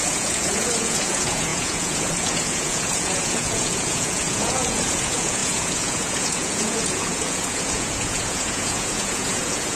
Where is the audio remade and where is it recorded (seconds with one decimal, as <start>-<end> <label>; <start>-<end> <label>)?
0.0-9.8 remade